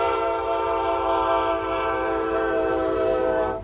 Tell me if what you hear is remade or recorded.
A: remade